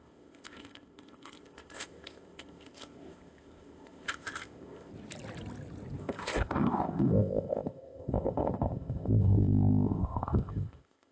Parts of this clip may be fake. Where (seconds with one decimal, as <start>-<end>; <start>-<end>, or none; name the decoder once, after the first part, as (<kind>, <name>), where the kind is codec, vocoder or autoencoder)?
0.0-4.9 (codec, ZipCodec); 6.0-11.1